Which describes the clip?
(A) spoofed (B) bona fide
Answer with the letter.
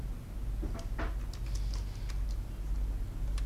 B